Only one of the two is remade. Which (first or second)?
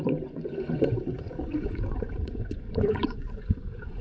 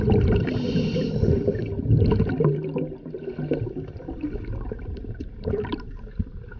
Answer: first